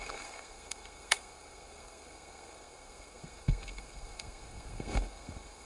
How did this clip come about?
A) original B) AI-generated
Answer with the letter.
B